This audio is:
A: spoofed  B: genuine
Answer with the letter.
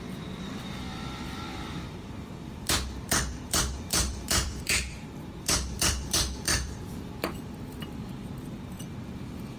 A